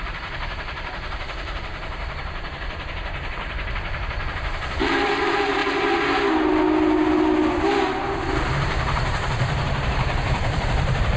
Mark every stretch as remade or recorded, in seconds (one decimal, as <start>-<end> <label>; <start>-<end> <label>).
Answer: 0.0-5.6 remade; 5.6-8.3 recorded; 8.3-11.2 remade